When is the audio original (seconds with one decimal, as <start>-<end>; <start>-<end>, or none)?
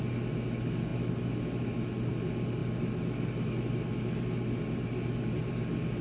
0.0-6.0